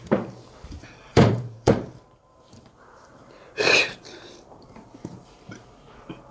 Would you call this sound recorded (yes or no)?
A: no